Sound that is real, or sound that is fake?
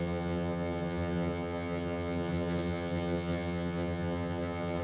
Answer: fake